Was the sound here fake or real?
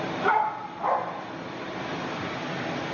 real